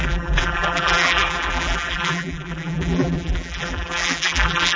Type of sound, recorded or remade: remade